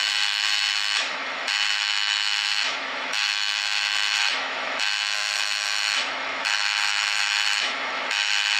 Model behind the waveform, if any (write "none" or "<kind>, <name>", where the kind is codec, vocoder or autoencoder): autoencoder, DAC-VAE